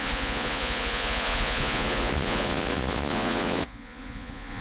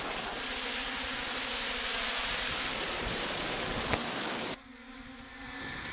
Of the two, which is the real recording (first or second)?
second